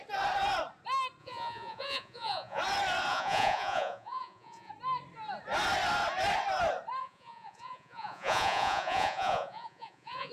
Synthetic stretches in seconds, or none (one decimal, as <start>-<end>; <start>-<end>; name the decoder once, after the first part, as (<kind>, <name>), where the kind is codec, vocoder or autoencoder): 1.2-2.6 (vocoder, Vocos); 3.1-4.7; 7.0-10.3